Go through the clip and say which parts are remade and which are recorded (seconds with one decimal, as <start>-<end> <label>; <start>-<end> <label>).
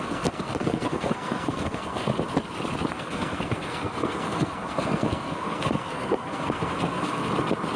0.0-2.1 remade; 2.1-2.9 recorded; 2.9-7.2 remade; 7.2-7.8 recorded